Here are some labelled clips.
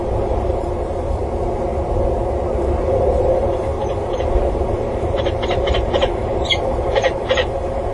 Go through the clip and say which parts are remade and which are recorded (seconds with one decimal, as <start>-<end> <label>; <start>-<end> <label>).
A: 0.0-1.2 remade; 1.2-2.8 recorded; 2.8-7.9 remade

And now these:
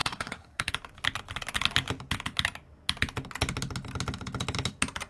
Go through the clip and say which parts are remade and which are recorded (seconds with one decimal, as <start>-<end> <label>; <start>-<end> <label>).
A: 0.0-0.7 remade; 0.7-5.1 recorded

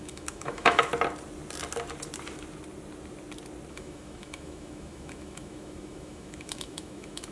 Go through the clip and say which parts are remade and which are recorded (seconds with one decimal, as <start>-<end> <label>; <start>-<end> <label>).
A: 0.0-0.9 remade; 0.9-3.7 recorded; 3.7-7.3 remade

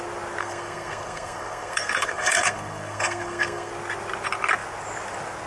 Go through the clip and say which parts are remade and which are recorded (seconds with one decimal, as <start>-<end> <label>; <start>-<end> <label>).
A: 0.0-0.4 recorded; 0.4-3.7 remade; 3.7-5.5 recorded

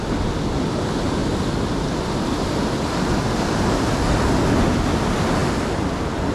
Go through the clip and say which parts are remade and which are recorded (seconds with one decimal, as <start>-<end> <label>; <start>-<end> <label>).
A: 0.0-6.3 recorded